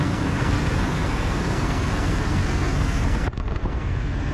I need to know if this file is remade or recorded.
remade